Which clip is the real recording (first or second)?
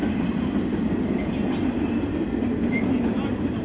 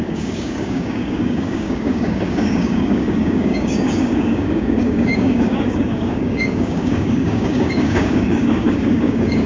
first